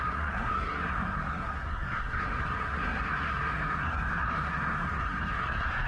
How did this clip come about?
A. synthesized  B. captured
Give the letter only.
A